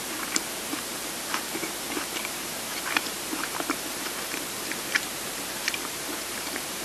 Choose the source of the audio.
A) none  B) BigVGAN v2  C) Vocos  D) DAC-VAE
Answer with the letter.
B